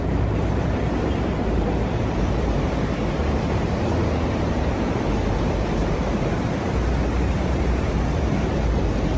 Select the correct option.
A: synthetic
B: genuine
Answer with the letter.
A